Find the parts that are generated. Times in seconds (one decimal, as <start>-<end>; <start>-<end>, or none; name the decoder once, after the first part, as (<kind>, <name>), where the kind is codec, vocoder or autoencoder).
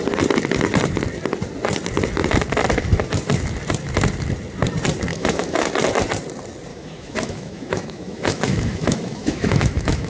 5.1-5.7 (autoencoder, DAC-VAE); 6.7-10.1